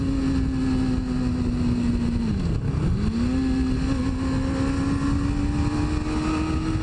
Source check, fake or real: real